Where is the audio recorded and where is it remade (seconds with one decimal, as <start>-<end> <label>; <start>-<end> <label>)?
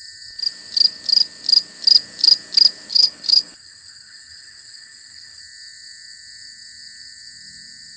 0.0-2.9 recorded; 2.9-5.4 remade; 5.4-8.0 recorded